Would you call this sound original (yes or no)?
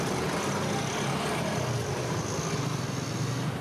yes